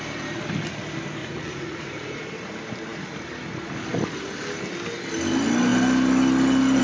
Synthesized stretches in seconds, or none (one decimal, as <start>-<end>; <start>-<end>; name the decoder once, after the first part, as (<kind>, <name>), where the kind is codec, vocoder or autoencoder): 1.2-2.2 (vocoder, Vocos)